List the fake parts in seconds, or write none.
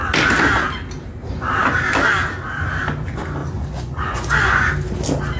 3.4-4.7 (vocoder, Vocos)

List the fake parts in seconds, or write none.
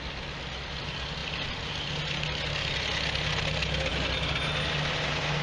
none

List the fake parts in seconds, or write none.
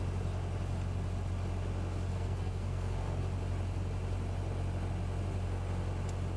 2.1-3.2 (codec, SNAC)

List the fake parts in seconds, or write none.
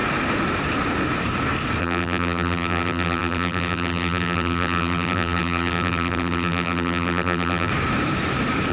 1.8-7.7 (vocoder, BigVGAN v2)